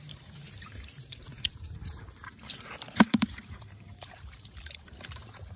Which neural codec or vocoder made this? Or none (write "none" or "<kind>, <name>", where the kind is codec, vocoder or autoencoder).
vocoder, BigVGAN v2